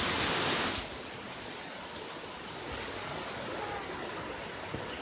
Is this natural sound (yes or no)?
yes